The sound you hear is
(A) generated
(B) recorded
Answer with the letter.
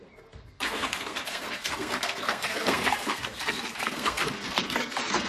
A